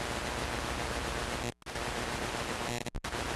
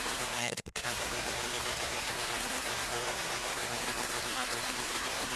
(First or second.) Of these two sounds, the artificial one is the second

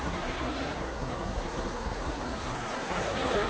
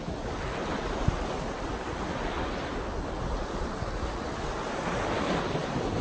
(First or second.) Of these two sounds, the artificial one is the first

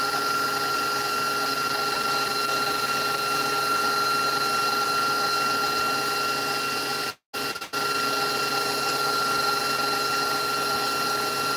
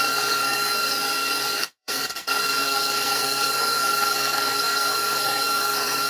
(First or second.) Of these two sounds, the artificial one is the second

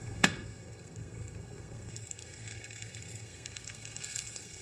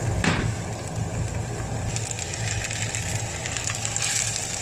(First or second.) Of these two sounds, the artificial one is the first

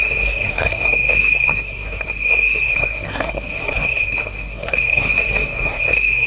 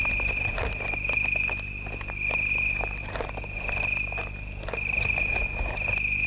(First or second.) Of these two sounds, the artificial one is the first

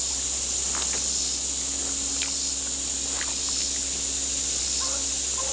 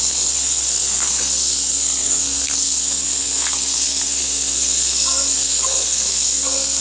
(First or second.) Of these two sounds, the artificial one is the second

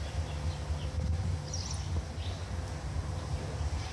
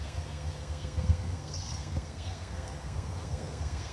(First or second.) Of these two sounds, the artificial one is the second